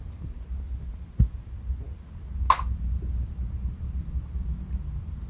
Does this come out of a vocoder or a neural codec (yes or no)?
no